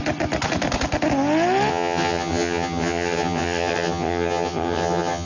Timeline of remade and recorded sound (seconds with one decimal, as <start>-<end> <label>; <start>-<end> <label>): 0.0-1.7 recorded; 1.7-5.3 remade